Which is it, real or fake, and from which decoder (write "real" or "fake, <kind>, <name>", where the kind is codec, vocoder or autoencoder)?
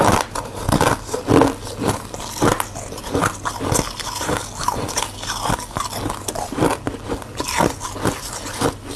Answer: real